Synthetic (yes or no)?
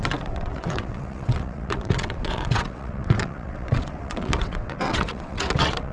yes